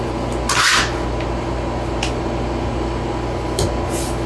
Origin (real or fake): real